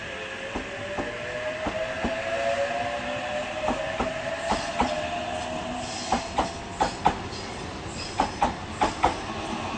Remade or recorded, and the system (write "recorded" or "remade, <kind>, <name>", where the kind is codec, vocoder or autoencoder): recorded